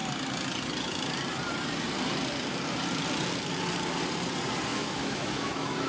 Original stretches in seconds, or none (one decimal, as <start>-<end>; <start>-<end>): 0.0-4.7